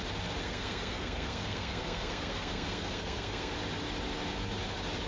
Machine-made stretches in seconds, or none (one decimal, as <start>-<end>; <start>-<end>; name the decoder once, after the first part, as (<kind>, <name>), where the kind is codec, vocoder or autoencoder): 0.4-3.5 (codec, SNAC)